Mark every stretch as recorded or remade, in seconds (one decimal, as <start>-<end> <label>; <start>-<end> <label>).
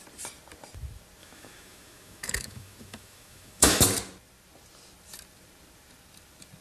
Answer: 0.0-1.2 recorded; 1.2-3.8 remade; 3.8-6.6 recorded